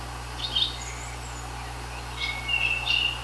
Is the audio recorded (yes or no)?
yes